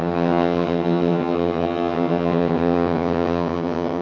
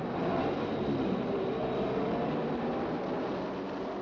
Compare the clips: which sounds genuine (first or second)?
second